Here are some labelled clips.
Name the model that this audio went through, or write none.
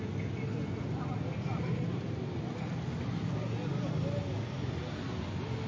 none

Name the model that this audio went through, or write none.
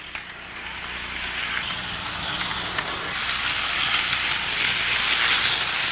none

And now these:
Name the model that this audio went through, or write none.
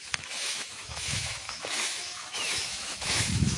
autoencoder, DAC-VAE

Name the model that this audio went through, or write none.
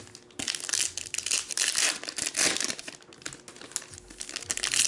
none